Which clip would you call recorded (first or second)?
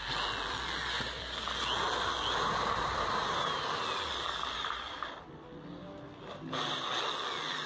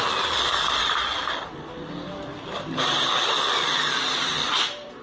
first